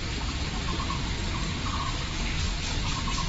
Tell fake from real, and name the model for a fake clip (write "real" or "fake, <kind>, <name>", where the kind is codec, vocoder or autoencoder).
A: real